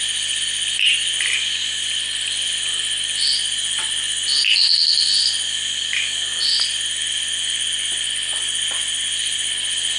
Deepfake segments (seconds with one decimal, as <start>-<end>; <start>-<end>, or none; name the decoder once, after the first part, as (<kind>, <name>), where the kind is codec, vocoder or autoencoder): none